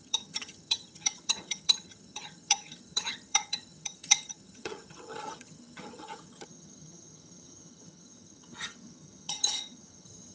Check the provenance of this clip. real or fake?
fake